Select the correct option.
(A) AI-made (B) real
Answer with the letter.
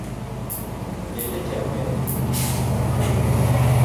B